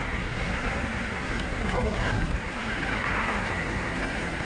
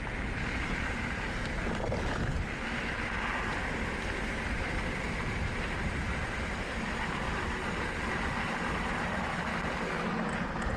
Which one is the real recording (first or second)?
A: second